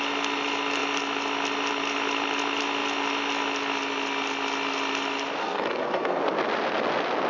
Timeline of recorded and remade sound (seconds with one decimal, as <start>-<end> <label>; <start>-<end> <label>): 0.0-5.4 recorded; 5.4-6.2 remade; 6.2-7.3 recorded